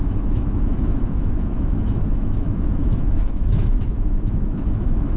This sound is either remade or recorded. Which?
remade